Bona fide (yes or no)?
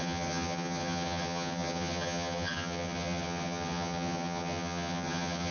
no